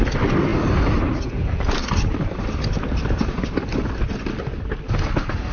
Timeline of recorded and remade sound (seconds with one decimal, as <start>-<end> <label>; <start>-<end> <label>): 0.0-5.5 recorded